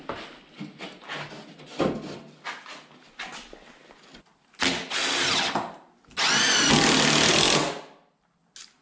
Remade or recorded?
recorded